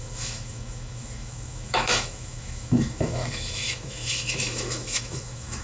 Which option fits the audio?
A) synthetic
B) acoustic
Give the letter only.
A